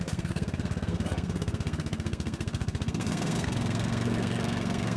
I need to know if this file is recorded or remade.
remade